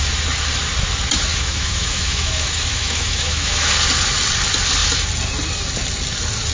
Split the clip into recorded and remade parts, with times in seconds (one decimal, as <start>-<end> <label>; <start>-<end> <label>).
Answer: 0.0-1.3 recorded; 1.3-3.7 remade; 3.7-6.5 recorded